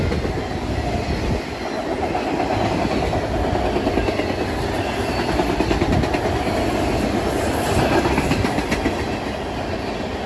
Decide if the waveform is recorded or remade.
recorded